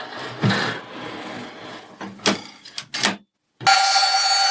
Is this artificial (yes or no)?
no